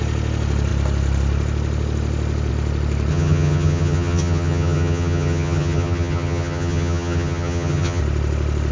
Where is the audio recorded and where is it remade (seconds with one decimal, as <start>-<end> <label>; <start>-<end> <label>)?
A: 0.0-3.1 recorded; 3.1-8.0 remade; 8.0-8.7 recorded